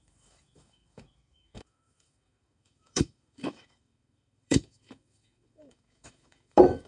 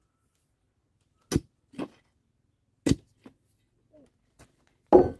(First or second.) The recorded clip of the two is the second